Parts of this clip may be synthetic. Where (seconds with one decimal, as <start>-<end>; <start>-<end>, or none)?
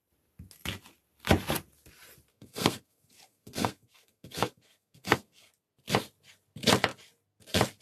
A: 2.3-5.5